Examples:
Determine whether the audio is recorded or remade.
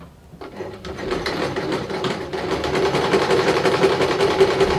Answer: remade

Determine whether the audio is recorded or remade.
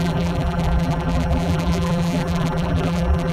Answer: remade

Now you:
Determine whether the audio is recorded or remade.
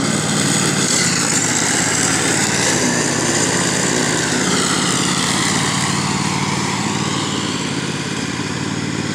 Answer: remade